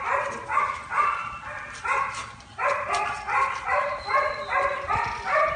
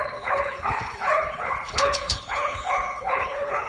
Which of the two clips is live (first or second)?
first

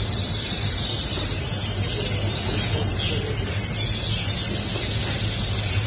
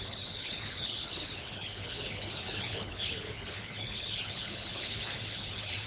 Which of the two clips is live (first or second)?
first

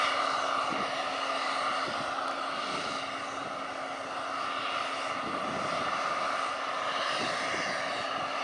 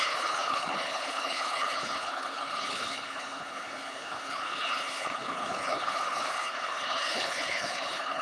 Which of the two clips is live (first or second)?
first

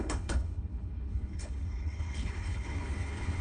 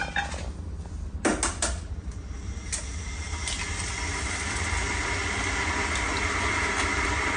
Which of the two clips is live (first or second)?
second